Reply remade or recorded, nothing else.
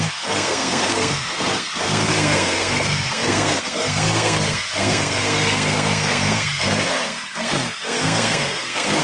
remade